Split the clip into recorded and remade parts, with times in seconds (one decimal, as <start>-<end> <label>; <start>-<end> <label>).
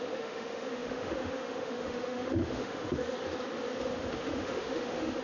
0.0-3.0 remade; 3.0-3.8 recorded; 3.8-5.2 remade